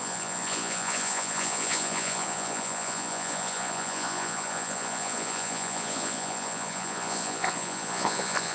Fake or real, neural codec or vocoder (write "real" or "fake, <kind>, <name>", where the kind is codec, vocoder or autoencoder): fake, vocoder, Vocos